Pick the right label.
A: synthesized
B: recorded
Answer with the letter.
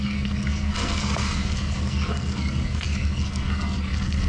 A